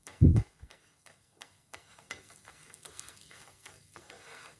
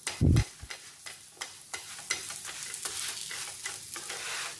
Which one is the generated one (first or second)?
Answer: first